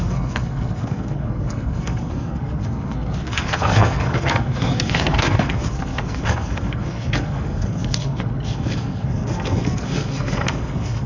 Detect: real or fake fake